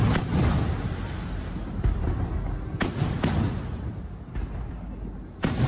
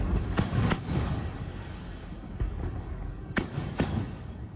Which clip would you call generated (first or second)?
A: second